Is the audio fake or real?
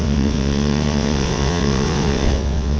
fake